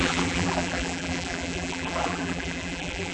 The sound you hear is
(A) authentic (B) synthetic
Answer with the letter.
B